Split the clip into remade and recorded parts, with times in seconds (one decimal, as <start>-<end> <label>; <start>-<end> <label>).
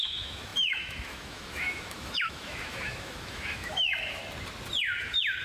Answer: 0.0-4.2 remade; 4.2-5.0 recorded; 5.0-5.4 remade